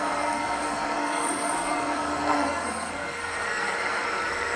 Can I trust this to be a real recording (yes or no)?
no